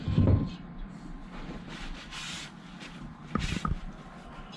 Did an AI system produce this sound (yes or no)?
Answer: no